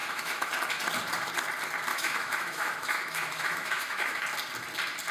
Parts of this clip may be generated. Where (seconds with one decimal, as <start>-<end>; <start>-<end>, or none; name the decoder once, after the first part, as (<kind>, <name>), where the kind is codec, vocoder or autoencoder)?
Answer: 0.0-0.5 (autoencoder, DAC-VAE); 1.9-4.2